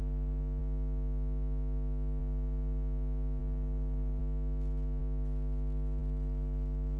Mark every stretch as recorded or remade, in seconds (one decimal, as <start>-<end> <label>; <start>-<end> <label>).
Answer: 0.0-3.4 recorded; 3.4-4.2 remade; 4.2-7.0 recorded